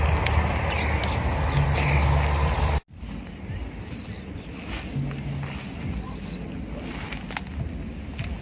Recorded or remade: recorded